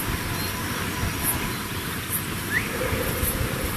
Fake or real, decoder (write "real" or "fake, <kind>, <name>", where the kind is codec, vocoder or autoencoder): real